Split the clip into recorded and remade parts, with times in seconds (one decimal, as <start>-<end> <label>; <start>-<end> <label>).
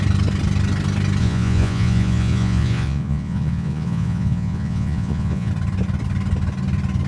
0.0-1.2 recorded; 1.2-5.5 remade; 5.5-7.1 recorded